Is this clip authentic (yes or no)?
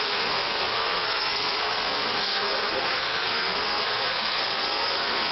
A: no